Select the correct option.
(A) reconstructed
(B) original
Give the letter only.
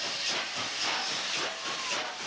A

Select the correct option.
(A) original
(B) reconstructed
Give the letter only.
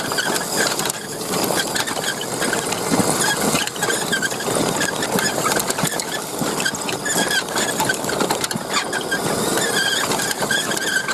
A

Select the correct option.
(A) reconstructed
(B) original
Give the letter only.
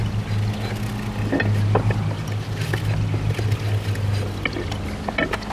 B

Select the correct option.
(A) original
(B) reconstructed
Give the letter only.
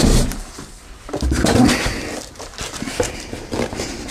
B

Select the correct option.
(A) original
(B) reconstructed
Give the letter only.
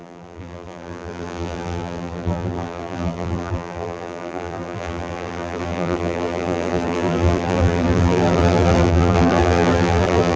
B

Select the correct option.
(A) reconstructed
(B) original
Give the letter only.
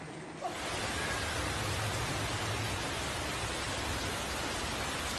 B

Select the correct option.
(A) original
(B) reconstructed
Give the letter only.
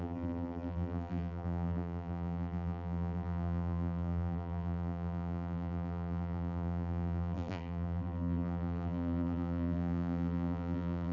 B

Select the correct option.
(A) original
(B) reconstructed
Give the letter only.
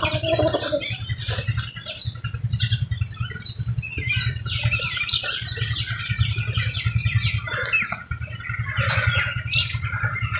A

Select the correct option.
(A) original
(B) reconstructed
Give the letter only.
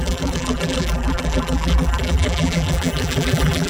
B